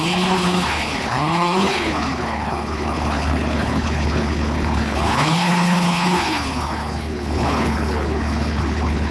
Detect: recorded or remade remade